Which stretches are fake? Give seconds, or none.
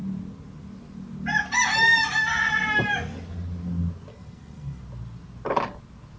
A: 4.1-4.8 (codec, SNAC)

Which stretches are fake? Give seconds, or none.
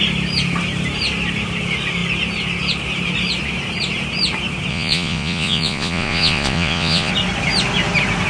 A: 4.7-7.1 (vocoder, Vocos)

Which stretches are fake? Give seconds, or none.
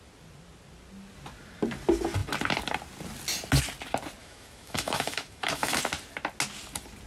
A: 4.2-5.8 (autoencoder, DAC-VAE)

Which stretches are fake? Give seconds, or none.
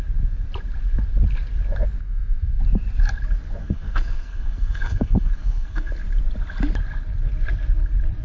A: 3.6-5.9 (codec, SNAC)